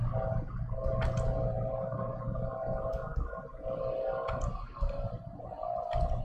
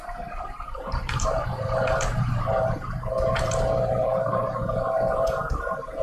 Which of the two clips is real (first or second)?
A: first